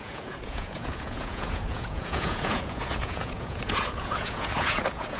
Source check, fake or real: fake